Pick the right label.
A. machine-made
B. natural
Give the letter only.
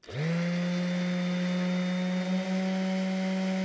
B